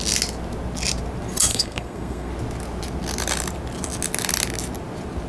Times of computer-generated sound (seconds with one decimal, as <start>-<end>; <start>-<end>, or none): 1.5-2.3